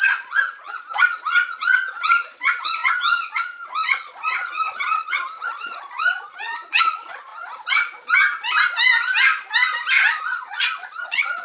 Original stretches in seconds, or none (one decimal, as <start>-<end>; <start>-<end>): 7.3-10.2